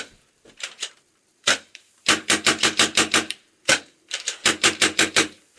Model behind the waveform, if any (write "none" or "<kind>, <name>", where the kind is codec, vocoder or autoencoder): vocoder, BigVGAN v2